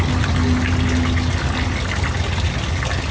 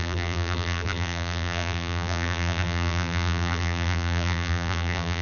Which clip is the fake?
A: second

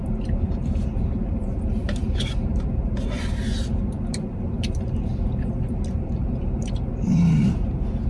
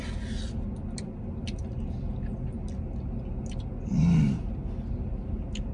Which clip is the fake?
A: first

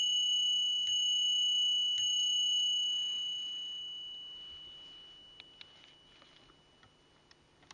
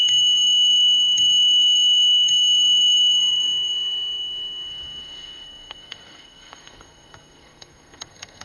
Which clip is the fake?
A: second